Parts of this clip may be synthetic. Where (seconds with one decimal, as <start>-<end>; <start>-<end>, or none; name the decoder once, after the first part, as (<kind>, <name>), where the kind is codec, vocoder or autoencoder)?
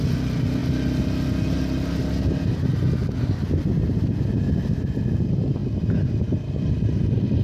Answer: none